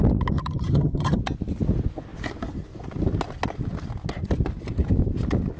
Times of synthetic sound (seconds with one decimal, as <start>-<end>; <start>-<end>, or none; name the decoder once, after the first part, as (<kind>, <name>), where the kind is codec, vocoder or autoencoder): 0.4-1.2 (vocoder, HiFi-GAN)